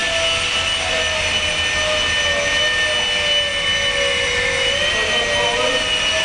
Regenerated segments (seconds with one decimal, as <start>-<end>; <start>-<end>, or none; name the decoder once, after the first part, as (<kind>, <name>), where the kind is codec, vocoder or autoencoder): none